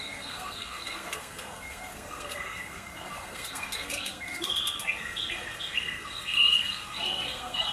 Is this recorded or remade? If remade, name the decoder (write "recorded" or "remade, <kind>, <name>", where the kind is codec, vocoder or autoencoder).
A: remade, codec, SNAC